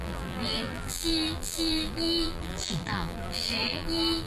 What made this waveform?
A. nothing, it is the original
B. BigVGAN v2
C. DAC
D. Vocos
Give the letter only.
B